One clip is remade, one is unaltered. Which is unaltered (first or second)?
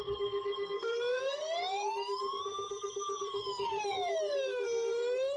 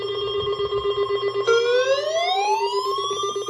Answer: second